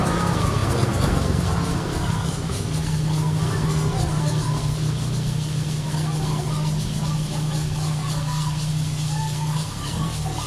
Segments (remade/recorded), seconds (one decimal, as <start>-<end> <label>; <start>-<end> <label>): 0.0-10.5 remade